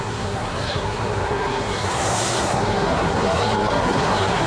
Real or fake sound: fake